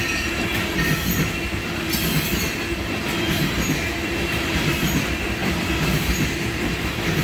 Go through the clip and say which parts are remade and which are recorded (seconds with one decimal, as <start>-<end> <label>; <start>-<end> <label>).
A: 0.0-5.4 recorded; 5.4-6.1 remade; 6.1-7.2 recorded